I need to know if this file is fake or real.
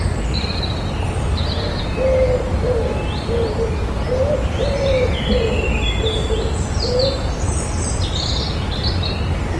real